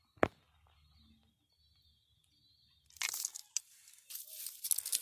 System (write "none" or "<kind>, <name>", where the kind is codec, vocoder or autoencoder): none